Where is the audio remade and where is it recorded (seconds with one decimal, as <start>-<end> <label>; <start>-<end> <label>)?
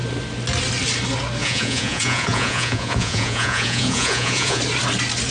0.0-1.4 recorded; 1.4-4.6 remade; 4.6-5.3 recorded